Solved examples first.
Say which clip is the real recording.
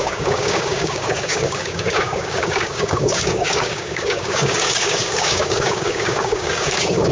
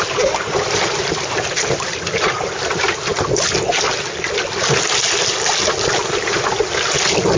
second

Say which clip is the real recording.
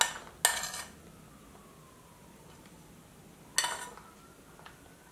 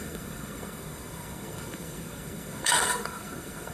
first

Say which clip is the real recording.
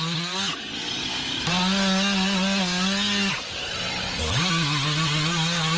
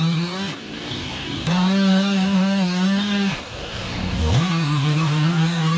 first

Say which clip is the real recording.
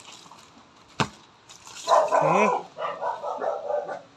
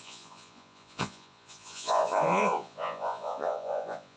first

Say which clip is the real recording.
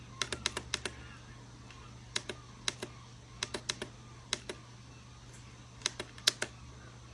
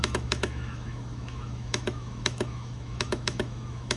first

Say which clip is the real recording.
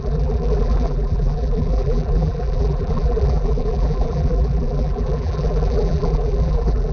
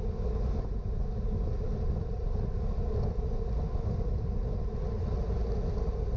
second